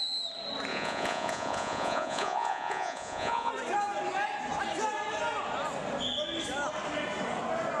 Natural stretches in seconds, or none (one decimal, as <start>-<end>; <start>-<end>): 0.0-0.7; 3.5-7.8